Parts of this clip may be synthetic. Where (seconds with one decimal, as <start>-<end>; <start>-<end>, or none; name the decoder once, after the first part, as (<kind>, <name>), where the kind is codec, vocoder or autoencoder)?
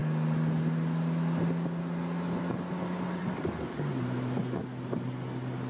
none